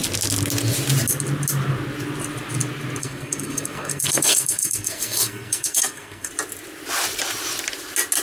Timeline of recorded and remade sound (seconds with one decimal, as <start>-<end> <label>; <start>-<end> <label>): 0.0-3.0 recorded; 3.0-6.3 remade; 6.3-8.2 recorded

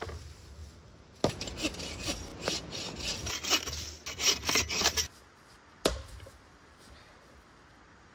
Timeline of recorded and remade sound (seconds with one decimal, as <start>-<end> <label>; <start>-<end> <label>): 0.0-8.1 recorded

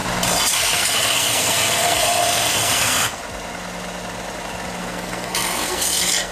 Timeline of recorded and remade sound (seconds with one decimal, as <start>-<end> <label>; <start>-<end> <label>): 0.0-0.5 recorded; 0.5-3.2 remade; 3.2-4.8 recorded; 4.8-6.3 remade

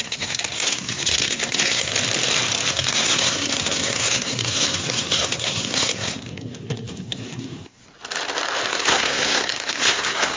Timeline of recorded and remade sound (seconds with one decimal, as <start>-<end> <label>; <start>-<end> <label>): 0.0-1.9 remade; 1.9-2.7 recorded; 2.7-7.8 remade; 7.8-8.7 recorded; 8.7-10.4 remade

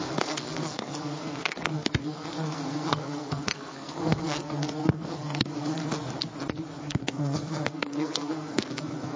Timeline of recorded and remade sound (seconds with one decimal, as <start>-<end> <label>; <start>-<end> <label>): 0.0-5.8 remade; 5.8-6.8 recorded; 6.8-9.2 remade